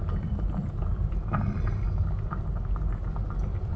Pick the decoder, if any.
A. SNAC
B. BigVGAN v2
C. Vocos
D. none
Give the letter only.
D